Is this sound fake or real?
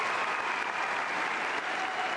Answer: real